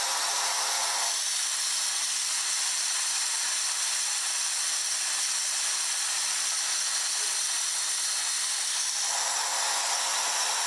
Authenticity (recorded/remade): recorded